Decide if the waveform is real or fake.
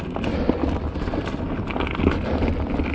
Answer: real